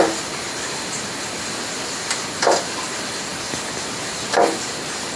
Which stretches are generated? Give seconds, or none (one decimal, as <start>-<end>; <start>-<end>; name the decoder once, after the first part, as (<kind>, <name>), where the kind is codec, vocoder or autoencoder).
none